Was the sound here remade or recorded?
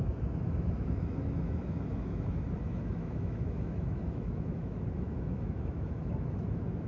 remade